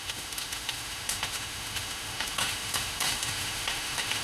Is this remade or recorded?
remade